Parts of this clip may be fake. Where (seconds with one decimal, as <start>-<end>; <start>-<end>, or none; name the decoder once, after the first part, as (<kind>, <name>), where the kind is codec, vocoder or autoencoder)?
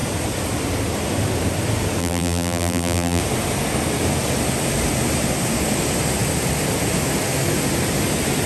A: 2.0-3.2 (vocoder, BigVGAN v2)